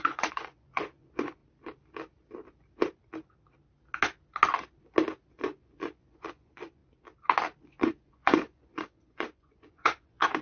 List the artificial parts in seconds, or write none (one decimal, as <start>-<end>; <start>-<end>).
0.0-1.4; 5.3-6.8; 7.6-10.4